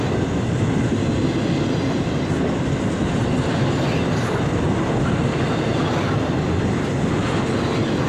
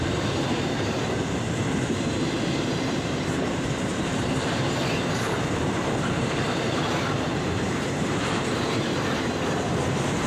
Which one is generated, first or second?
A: second